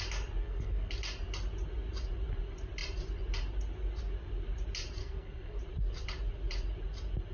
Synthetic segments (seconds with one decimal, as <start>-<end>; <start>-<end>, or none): 0.4-0.9; 5.0-5.6